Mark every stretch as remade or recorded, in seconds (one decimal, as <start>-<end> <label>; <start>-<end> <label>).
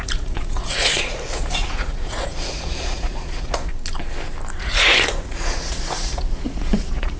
0.0-3.7 remade; 3.7-4.6 recorded; 4.6-7.2 remade